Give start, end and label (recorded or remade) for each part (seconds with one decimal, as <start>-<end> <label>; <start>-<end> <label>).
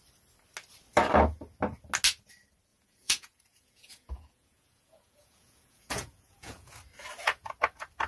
0.0-2.7 recorded; 2.7-6.7 remade; 6.7-8.1 recorded